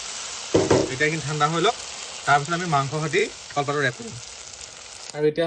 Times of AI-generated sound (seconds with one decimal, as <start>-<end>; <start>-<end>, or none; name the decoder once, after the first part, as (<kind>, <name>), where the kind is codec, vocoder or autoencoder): 3.2-3.9 (autoencoder, DAC-VAE)